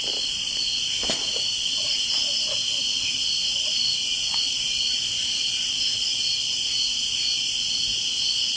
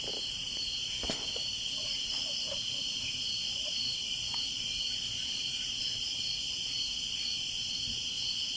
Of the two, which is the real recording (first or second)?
first